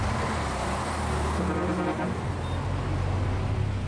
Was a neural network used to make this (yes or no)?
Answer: no